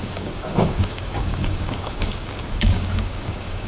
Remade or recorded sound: remade